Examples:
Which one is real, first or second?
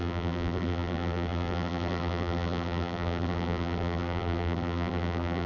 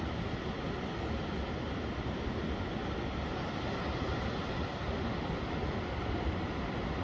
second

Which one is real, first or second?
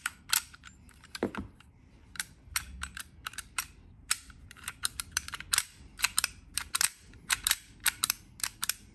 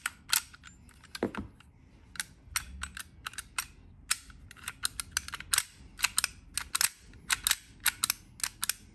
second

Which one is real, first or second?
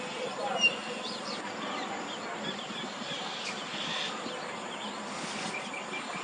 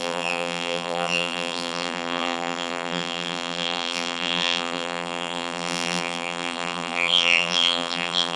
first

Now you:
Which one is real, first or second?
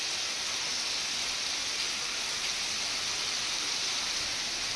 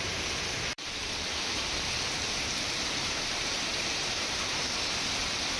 first